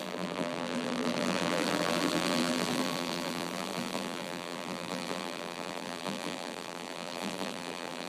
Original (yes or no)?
no